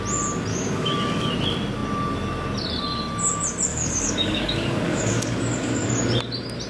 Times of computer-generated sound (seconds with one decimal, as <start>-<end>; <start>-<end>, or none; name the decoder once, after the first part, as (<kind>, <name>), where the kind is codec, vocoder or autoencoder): 0.5-1.3 (codec, DAC); 3.7-5.9